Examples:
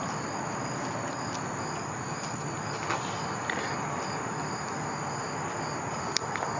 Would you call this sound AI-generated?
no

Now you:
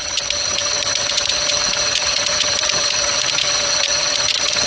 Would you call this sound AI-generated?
yes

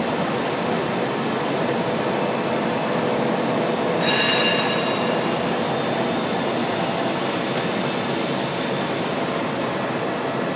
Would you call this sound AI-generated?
no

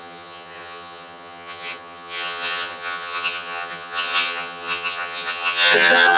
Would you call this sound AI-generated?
yes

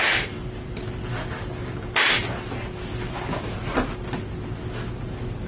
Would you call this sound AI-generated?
no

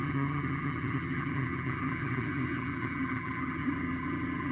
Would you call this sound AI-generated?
yes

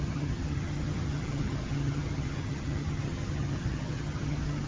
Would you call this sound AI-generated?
yes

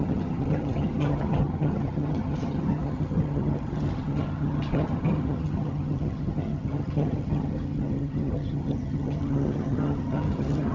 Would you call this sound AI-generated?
yes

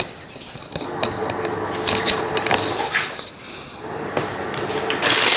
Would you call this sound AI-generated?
no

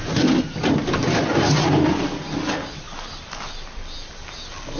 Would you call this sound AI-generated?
no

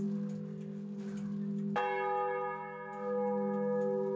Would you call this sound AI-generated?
no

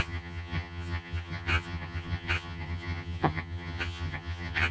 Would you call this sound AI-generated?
yes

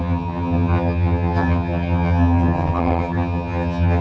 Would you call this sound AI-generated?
yes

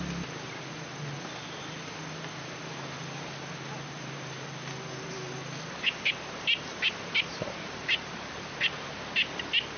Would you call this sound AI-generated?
no